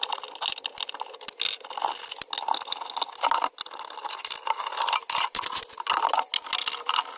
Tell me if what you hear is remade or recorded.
recorded